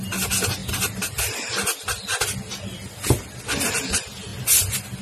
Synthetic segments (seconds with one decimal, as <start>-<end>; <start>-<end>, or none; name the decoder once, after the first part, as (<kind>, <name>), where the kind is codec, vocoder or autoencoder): 0.6-1.7 (vocoder, BigVGAN v2)

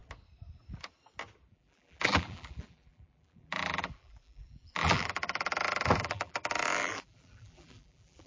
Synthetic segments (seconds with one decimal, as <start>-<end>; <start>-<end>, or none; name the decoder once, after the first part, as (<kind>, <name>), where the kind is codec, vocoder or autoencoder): 1.5-8.3 (vocoder, BigVGAN v2)

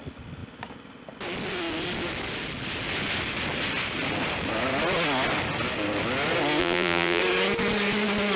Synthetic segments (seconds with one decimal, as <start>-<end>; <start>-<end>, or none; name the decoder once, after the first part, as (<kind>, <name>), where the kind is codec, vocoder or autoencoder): 6.6-7.2 (vocoder, BigVGAN v2)

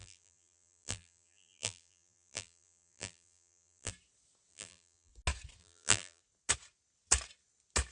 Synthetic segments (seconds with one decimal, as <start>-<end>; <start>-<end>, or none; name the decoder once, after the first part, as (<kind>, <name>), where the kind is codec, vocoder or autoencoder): 0.0-3.9 (vocoder, BigVGAN v2); 4.5-5.1; 5.6-6.2

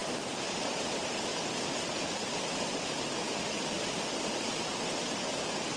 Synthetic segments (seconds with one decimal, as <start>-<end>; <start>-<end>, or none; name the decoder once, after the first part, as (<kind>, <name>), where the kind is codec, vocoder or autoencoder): 1.3-4.8 (vocoder, BigVGAN v2)

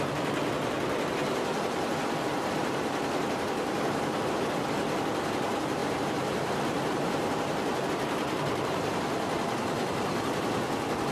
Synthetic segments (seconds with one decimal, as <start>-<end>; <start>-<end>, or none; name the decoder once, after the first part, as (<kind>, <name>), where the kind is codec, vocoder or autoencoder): 5.8-9.0 (vocoder, BigVGAN v2)

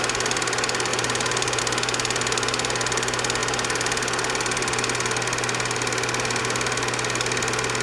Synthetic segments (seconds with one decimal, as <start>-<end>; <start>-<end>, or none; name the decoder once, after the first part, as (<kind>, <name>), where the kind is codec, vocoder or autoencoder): 0.9-1.6 (vocoder, BigVGAN v2)

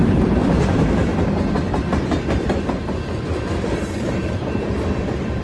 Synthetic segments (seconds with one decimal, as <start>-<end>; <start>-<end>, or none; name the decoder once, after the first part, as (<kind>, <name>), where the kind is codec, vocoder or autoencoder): 0.0-1.1 (vocoder, BigVGAN v2); 4.3-5.4